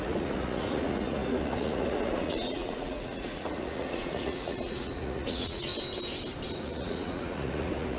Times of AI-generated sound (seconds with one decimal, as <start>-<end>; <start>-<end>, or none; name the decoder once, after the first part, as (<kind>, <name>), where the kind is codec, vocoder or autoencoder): 0.0-5.7 (vocoder, Vocos); 6.6-8.0